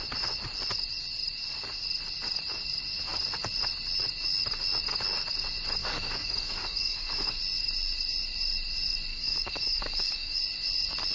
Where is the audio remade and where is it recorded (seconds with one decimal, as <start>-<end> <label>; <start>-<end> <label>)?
0.0-5.8 recorded; 5.8-7.4 remade; 7.4-9.1 recorded; 9.1-10.4 remade; 10.4-11.1 recorded